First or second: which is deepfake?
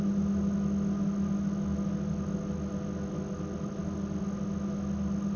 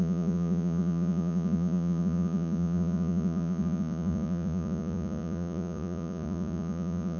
second